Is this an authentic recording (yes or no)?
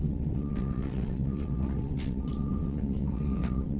no